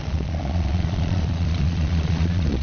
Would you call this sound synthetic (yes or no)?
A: yes